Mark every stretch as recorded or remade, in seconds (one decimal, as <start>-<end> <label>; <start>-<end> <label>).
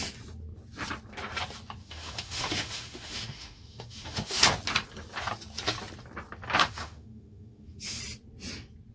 0.0-1.8 recorded; 1.8-4.4 remade; 4.4-6.6 recorded; 6.6-8.0 remade; 8.0-8.9 recorded